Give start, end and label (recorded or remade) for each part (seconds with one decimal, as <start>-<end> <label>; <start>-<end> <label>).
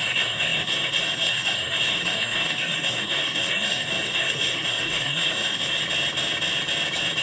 0.0-5.8 remade; 5.8-7.2 recorded